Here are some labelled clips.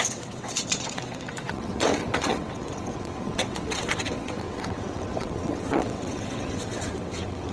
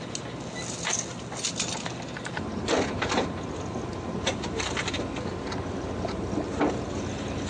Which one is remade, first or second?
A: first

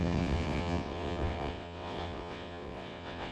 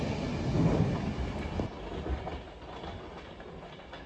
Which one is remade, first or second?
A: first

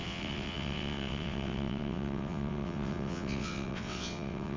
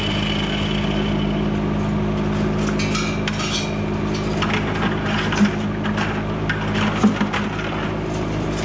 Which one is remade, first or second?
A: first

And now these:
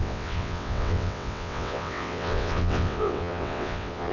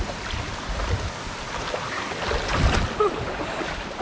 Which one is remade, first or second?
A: first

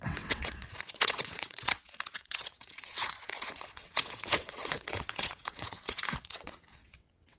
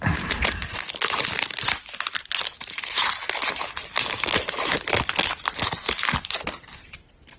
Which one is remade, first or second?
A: first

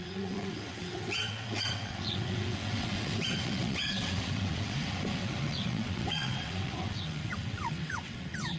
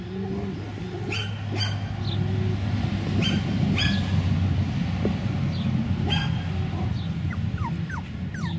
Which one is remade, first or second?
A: first